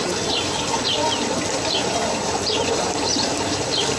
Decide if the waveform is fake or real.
real